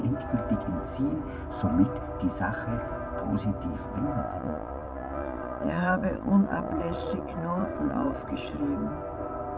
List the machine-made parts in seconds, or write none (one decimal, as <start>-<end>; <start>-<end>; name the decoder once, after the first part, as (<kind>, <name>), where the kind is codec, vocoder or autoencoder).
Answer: 4.2-8.6 (vocoder, Vocos)